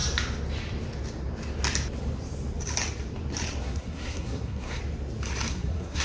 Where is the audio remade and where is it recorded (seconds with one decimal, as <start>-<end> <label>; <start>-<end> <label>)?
0.0-3.6 recorded; 3.6-4.8 remade; 4.8-5.5 recorded; 5.5-6.0 remade